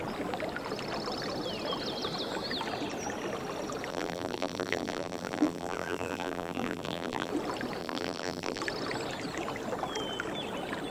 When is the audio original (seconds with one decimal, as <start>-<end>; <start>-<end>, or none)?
0.0-3.9; 7.3-7.8; 8.6-10.9

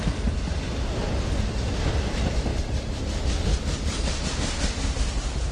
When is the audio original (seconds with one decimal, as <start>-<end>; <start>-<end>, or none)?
0.0-2.5; 3.0-3.5; 4.3-5.5

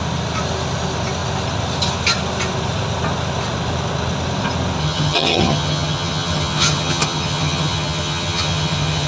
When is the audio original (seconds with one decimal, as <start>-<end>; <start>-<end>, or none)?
0.0-4.8